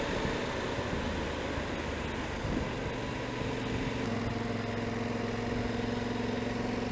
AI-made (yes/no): no